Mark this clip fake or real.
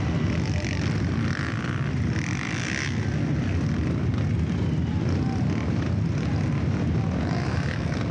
real